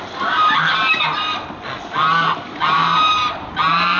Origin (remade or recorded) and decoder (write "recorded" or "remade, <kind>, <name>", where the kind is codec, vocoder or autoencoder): recorded